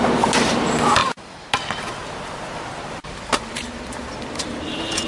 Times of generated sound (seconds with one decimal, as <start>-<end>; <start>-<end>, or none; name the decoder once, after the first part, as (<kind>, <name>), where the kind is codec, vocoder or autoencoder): 3.0-4.3 (vocoder, BigVGAN v2)